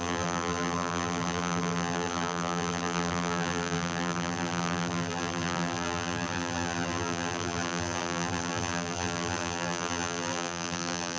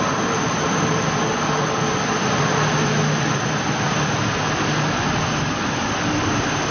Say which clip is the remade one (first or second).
first